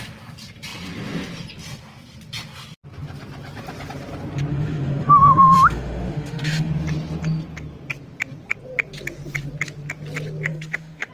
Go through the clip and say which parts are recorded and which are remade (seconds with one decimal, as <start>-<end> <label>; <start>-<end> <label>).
0.0-4.5 recorded; 4.5-6.7 remade; 6.7-10.5 recorded; 10.5-11.1 remade